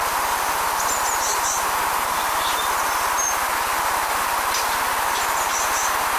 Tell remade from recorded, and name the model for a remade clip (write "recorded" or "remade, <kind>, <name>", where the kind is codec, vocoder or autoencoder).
recorded